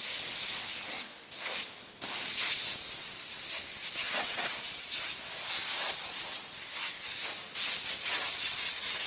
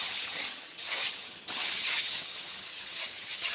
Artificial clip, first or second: second